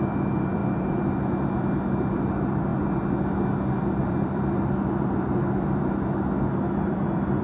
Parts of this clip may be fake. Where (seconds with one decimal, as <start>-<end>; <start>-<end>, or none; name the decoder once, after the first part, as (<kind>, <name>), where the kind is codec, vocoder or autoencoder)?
0.0-2.7 (vocoder, BigVGAN v2); 3.8-7.4